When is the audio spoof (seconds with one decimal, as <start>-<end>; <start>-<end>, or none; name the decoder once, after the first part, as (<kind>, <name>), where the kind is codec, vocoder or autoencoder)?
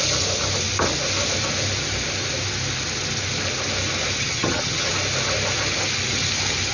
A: 4.2-4.9 (vocoder, HiFi-GAN)